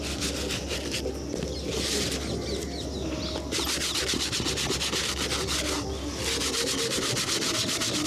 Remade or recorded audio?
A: remade